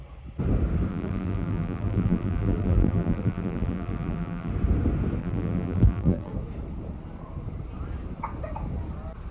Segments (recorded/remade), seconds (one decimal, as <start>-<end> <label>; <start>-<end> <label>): 0.0-0.9 recorded; 0.9-4.5 remade; 4.5-5.2 recorded; 5.2-6.3 remade; 6.3-9.3 recorded